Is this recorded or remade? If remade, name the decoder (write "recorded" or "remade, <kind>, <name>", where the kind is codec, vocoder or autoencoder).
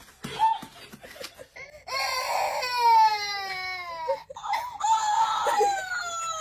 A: recorded